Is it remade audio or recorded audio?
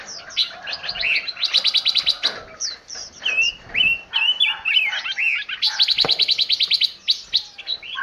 recorded